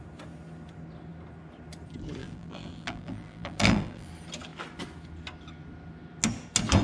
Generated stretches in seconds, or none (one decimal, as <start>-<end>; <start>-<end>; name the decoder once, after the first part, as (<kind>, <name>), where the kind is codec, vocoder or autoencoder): 2.2-4.1 (vocoder, BigVGAN v2)